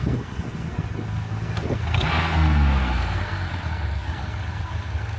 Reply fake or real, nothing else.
fake